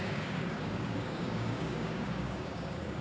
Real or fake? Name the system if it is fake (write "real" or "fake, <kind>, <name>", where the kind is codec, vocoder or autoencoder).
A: fake, codec, DAC